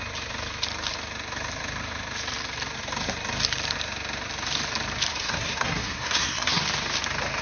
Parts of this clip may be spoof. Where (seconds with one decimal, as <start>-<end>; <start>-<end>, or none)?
5.1-6.6